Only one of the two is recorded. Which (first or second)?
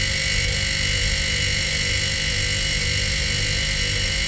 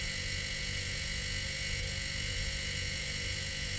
first